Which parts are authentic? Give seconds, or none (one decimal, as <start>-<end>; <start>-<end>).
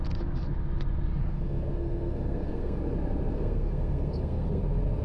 0.0-1.3; 2.8-3.3; 4.6-5.0